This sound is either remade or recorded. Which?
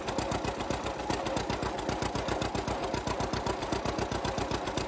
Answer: recorded